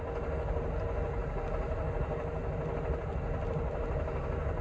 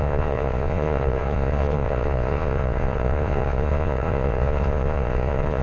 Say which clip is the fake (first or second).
second